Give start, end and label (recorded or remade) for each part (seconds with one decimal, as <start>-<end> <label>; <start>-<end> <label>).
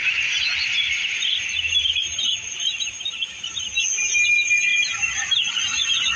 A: 0.0-3.0 remade; 3.0-4.7 recorded; 4.7-5.5 remade; 5.5-6.2 recorded